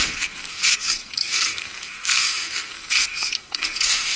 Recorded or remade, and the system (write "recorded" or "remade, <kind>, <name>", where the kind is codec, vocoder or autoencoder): remade, codec, SNAC